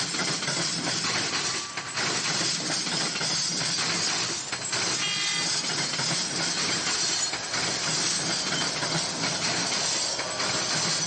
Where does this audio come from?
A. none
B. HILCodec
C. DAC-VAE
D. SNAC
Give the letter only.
A